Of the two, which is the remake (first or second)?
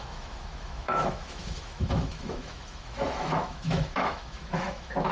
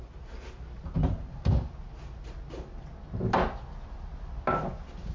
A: first